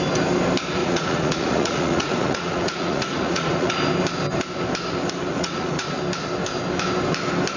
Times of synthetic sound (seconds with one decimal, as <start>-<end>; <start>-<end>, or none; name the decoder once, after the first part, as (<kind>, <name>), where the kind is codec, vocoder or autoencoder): 0.8-3.7 (vocoder, Vocos); 5.3-6.0